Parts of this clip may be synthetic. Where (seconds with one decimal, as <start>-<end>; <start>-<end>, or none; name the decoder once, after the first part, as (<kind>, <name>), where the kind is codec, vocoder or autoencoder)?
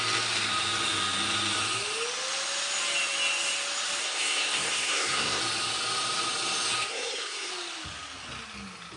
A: 4.0-5.4 (codec, SNAC); 6.9-7.5